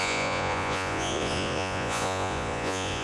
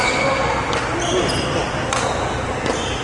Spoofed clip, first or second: first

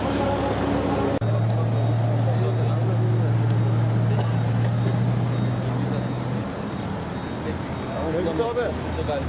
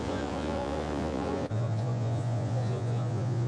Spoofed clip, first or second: second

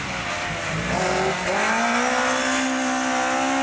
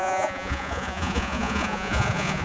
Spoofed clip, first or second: second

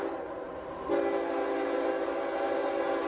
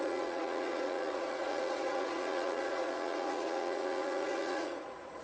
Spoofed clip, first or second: second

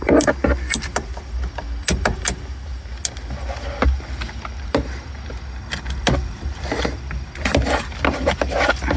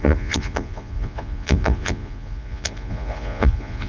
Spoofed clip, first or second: second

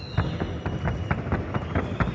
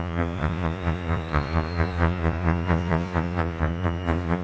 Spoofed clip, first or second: second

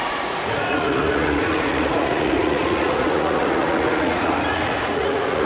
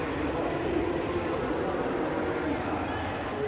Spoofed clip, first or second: first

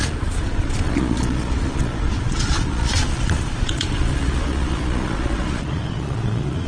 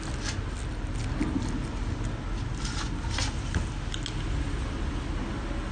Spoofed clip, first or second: first